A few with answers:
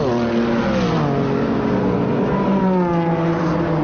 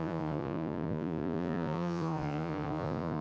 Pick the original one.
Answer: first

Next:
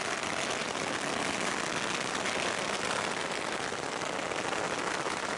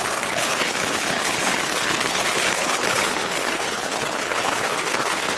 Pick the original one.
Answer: first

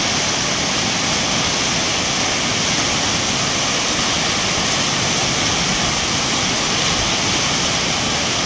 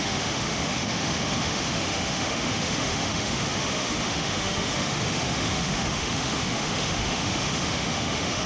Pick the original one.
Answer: first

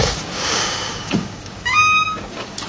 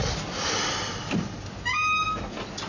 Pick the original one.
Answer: second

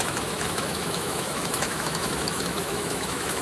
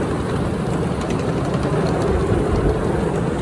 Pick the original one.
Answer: second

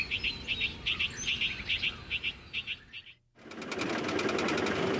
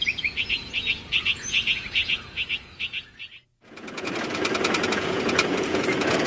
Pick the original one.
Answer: first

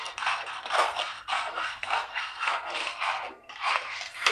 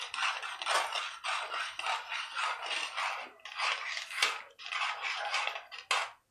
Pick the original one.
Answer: second